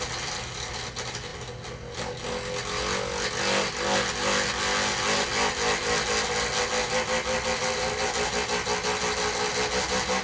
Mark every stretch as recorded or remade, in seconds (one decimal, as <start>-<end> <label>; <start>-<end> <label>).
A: 0.0-10.2 recorded